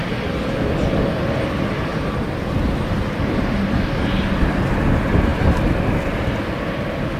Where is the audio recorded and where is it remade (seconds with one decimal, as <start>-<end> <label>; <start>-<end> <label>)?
0.0-1.9 recorded; 1.9-3.7 remade; 3.7-7.2 recorded